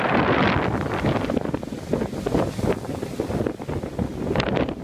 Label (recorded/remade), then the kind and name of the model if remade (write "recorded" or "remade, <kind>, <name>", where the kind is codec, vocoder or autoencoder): recorded